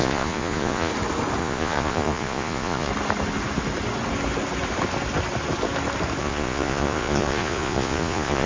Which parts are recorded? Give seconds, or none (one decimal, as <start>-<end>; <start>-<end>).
0.9-1.4; 2.9-6.2